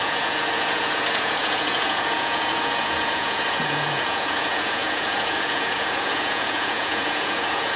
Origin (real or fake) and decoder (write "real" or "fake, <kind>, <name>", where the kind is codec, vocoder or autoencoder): fake, vocoder, Vocos